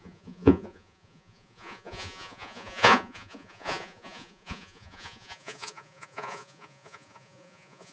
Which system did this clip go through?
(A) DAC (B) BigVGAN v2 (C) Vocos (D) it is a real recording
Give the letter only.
C